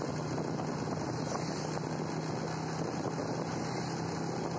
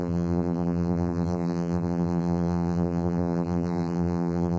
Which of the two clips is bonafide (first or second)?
first